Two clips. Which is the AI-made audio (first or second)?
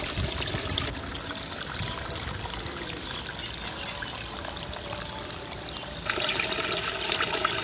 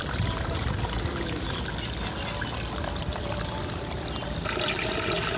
first